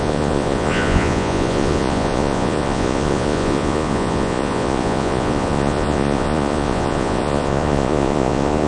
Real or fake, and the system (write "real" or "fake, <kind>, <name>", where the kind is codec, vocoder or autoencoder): fake, vocoder, Vocos